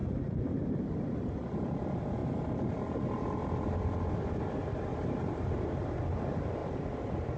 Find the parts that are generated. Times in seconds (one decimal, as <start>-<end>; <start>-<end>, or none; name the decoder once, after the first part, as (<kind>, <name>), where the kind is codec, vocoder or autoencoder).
4.9-6.0 (vocoder, BigVGAN v2)